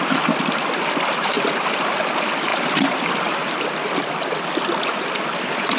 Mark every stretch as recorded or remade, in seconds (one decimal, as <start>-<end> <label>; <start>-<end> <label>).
0.0-5.8 recorded